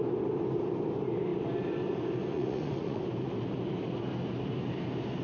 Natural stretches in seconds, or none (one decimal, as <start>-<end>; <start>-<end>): 0.0-2.3; 3.0-5.2